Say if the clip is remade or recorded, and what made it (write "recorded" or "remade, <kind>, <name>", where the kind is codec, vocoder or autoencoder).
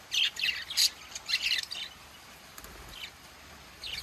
recorded